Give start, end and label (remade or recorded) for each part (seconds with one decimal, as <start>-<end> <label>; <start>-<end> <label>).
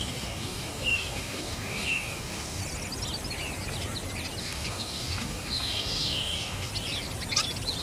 0.0-2.6 remade; 2.6-4.4 recorded; 4.4-6.7 remade; 6.7-7.8 recorded